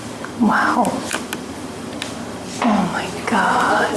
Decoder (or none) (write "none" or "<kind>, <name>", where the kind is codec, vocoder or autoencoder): none